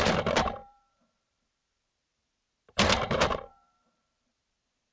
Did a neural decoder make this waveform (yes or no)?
yes